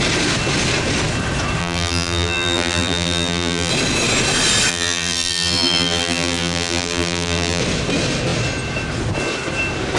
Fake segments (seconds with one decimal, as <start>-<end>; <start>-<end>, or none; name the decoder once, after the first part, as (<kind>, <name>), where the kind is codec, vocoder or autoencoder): 1.6-3.7 (vocoder, BigVGAN v2); 4.7-7.6